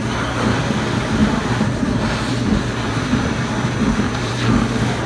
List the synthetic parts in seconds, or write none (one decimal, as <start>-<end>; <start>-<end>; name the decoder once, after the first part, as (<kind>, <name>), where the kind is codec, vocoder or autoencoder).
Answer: none